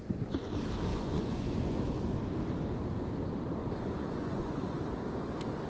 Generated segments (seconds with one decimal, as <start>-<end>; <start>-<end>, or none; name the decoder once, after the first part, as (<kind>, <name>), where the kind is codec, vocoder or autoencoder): 0.9-1.8 (vocoder, Vocos); 3.6-4.8